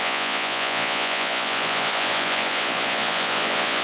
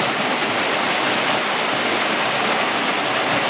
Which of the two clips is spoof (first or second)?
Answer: first